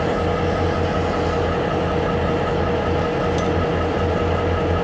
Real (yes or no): yes